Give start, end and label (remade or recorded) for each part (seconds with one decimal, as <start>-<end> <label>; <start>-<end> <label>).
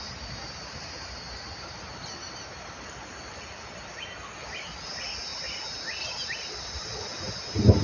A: 0.0-7.8 recorded